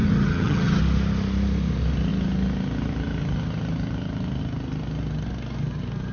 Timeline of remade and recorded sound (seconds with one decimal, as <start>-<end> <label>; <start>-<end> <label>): 0.0-0.8 remade; 0.8-6.1 recorded